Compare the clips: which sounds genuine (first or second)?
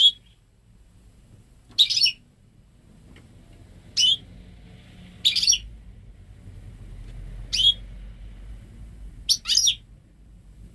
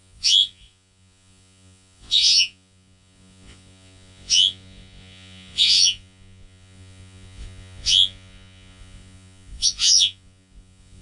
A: first